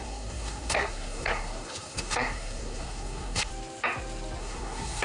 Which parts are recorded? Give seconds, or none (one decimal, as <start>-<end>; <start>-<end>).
3.5-4.4